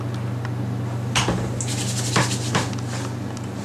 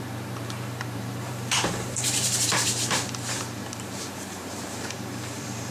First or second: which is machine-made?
second